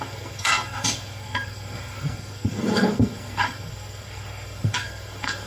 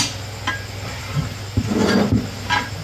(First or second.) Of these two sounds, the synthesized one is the first